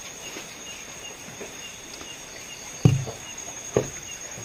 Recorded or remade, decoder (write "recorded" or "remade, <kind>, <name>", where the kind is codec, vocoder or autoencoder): remade, vocoder, BigVGAN v2